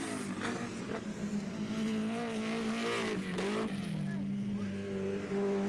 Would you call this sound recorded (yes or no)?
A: yes